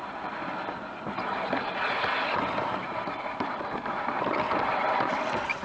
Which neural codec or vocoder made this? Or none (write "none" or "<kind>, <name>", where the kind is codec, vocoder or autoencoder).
none